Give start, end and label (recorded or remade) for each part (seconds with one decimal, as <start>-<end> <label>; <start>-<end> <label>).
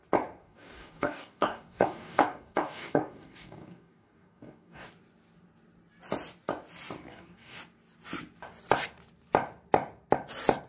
0.0-0.4 recorded; 0.4-4.9 remade; 4.9-7.1 recorded; 7.1-7.6 remade; 7.6-10.7 recorded